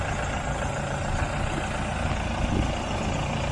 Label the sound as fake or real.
real